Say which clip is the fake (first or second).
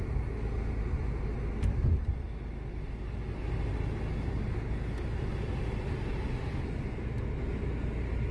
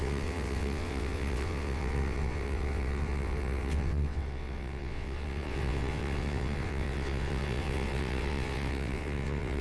second